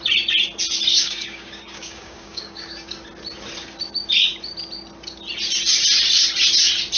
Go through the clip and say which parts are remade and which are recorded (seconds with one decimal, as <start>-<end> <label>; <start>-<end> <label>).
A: 0.0-0.9 recorded; 0.9-2.9 remade; 2.9-7.0 recorded